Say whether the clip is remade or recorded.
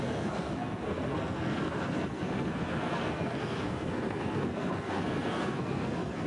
remade